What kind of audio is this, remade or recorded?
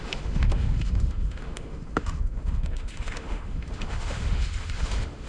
remade